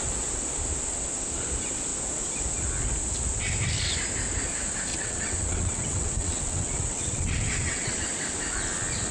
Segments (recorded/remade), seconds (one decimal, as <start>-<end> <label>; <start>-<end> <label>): 0.0-4.9 recorded; 4.9-7.9 remade; 7.9-9.1 recorded